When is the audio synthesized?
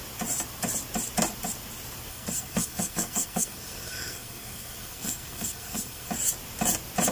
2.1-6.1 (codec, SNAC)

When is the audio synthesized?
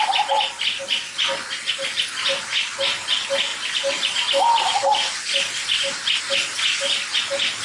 none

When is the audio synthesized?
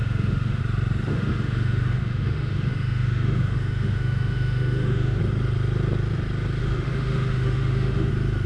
0.0-0.6 (autoencoder, DAC-VAE); 1.1-5.2; 6.6-8.1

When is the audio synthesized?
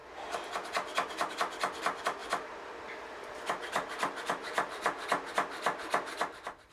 2.2-5.3 (vocoder, BigVGAN v2)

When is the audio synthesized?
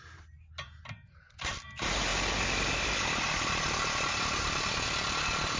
0.0-2.1 (vocoder, BigVGAN v2)